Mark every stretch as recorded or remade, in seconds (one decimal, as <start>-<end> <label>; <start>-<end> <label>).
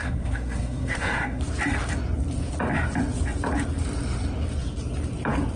0.0-1.4 remade; 1.4-5.6 recorded